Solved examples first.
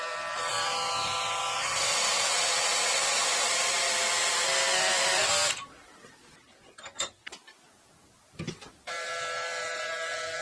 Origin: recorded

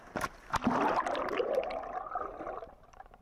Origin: recorded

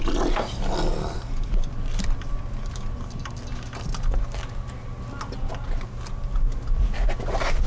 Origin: recorded